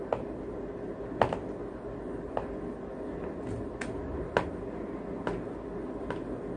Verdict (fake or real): real